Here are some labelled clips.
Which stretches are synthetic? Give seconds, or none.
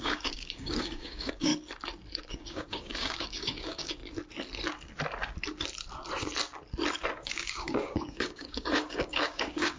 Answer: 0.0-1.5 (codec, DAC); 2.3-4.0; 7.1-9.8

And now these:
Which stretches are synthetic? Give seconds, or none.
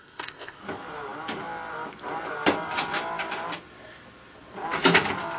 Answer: 0.0-0.6 (codec, ZipCodec)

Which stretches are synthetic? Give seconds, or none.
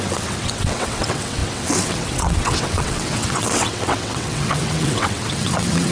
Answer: 0.0-5.9 (vocoder, WaveNeXt)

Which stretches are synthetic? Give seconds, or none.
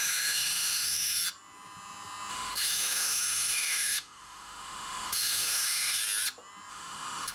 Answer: 0.0-1.2 (autoencoder, DAC-VAE); 2.3-6.0; 6.7-7.3